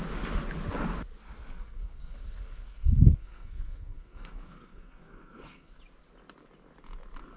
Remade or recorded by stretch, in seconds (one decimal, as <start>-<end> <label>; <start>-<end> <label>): 0.0-1.4 recorded; 1.4-5.8 remade; 5.8-7.4 recorded